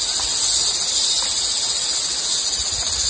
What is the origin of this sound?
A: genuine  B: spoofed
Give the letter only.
A